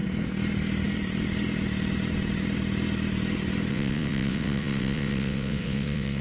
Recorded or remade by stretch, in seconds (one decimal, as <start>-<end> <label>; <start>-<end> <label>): 0.0-3.7 recorded; 3.7-6.2 remade